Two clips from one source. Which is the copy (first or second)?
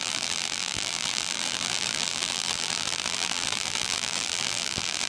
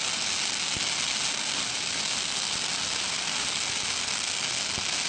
first